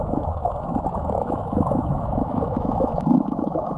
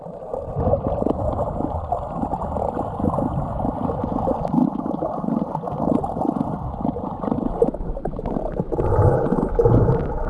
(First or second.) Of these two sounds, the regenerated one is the first